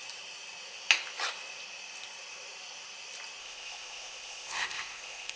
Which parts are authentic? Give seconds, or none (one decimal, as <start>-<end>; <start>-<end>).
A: 0.0-3.4